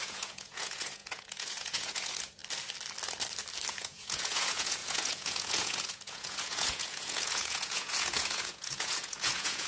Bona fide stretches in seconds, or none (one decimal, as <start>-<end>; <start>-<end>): 2.4-3.7